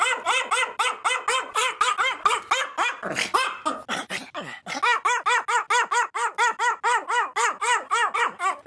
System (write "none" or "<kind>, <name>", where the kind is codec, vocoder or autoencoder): none